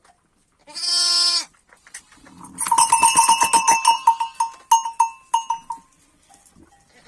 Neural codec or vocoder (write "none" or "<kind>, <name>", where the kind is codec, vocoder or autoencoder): none